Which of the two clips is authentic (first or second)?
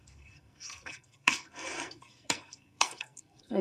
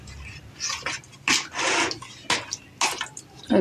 second